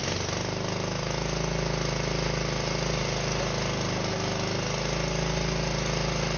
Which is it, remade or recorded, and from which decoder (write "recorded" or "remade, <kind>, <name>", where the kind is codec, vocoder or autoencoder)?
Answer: recorded